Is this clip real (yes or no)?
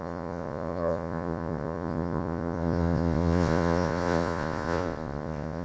no